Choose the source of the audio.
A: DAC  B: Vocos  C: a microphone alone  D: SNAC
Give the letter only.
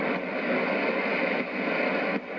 C